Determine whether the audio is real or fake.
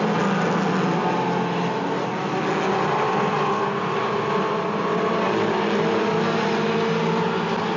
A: real